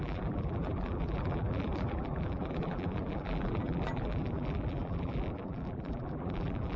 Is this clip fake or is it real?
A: fake